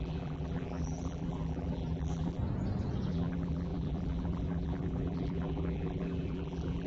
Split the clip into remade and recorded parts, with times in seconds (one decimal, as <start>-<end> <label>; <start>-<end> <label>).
0.0-2.4 remade; 2.4-3.1 recorded; 3.1-6.9 remade